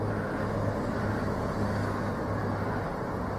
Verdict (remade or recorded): recorded